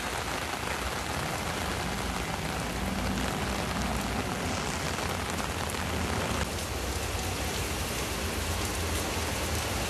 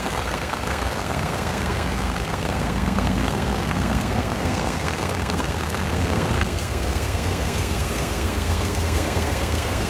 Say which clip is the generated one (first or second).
second